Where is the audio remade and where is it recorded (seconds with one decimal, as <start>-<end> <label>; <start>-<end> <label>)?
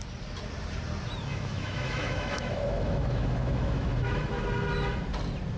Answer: 0.0-1.3 recorded; 1.3-4.4 remade; 4.4-5.6 recorded